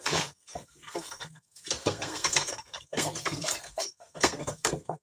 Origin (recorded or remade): remade